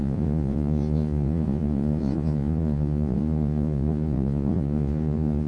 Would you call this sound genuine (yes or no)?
no